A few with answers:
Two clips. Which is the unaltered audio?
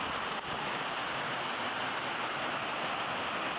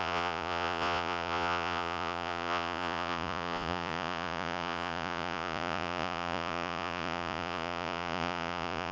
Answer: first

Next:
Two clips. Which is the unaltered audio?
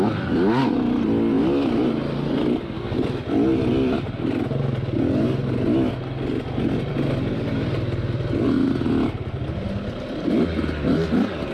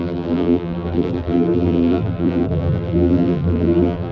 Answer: first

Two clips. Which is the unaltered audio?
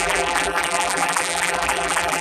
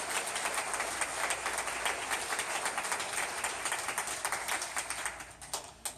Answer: second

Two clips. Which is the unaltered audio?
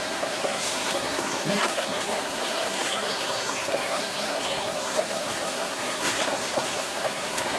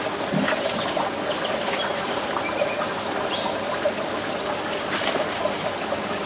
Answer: second